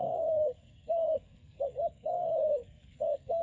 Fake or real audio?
fake